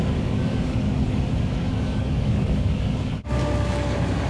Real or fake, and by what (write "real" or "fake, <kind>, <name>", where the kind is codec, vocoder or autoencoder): fake, codec, DAC